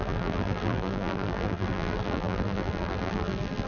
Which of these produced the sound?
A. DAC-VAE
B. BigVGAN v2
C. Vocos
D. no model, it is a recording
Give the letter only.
B